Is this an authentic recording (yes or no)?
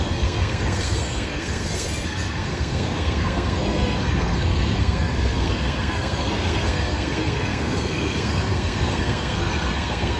no